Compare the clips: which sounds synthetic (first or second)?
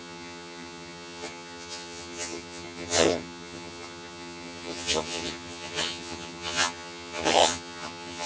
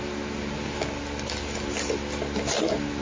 first